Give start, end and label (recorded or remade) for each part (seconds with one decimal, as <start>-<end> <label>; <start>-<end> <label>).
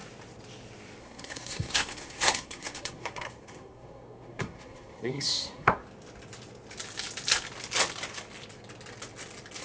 0.0-1.0 recorded; 1.0-5.8 remade; 5.8-9.6 recorded